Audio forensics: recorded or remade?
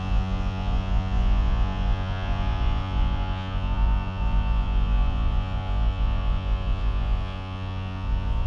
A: remade